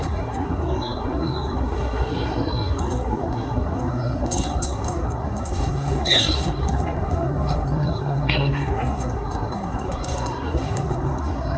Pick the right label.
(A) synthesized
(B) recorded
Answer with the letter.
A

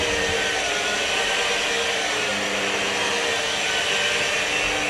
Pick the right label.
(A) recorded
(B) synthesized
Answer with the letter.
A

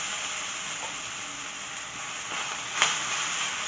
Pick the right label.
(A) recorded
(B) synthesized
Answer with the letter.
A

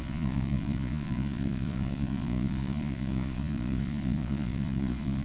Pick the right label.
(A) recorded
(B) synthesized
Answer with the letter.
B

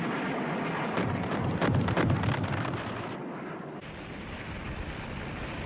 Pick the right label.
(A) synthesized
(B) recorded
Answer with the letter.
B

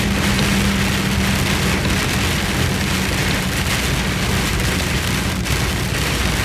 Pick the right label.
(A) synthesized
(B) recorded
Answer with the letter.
B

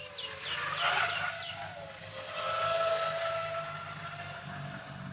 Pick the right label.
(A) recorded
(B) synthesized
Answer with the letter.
A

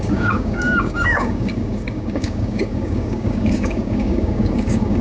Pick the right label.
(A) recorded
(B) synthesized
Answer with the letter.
B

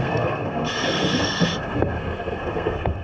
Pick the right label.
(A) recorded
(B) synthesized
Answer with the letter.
B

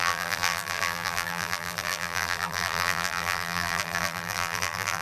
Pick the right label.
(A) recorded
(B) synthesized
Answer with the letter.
B